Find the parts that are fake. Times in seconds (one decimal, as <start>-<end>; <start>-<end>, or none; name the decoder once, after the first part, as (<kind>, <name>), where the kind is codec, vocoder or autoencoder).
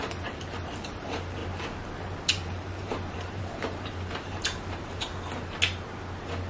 0.0-1.4 (vocoder, BigVGAN v2); 2.3-5.1